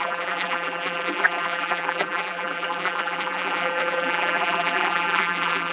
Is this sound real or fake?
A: fake